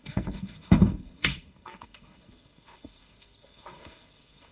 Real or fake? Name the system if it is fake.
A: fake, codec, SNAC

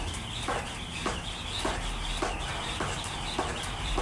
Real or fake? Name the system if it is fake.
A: real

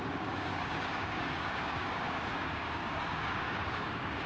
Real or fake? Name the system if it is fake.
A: fake, codec, DAC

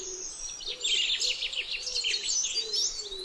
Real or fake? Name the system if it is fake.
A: real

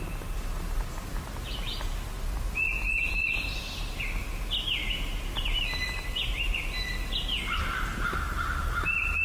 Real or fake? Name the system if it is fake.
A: real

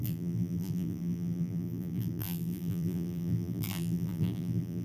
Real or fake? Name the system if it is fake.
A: fake, vocoder, BigVGAN v2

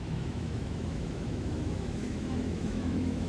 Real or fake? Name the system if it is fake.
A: fake, autoencoder, DAC-VAE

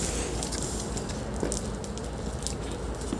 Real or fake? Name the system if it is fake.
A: real